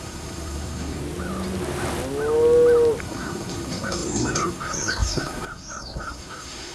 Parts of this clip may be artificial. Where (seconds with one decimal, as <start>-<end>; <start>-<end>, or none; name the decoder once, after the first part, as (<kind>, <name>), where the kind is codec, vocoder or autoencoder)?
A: 0.0-1.0 (codec, SNAC); 3.0-6.7